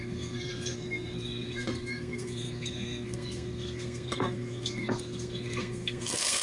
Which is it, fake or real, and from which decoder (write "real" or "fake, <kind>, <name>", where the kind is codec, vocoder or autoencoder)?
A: fake, codec, SNAC